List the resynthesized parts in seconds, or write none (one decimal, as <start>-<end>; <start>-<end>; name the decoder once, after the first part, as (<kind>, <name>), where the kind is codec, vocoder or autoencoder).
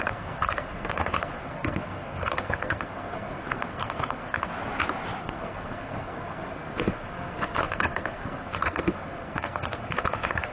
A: 0.0-4.5 (codec, SNAC); 5.2-10.5